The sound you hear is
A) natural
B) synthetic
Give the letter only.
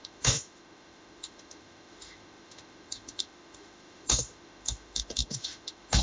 B